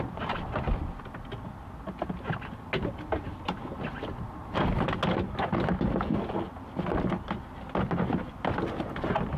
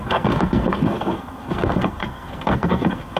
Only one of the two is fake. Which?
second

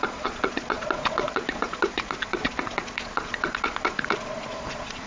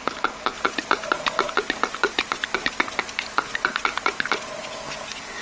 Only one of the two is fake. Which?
first